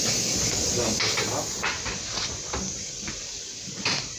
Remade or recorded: recorded